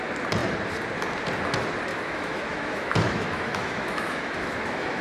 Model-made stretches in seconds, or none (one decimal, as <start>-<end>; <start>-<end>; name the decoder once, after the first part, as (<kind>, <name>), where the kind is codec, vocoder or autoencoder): 1.9-5.0 (autoencoder, DAC-VAE)